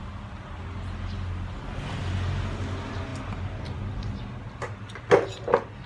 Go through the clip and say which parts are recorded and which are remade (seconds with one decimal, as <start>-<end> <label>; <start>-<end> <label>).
0.0-5.9 recorded